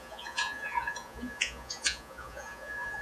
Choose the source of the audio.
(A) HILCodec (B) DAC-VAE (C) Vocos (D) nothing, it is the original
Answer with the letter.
C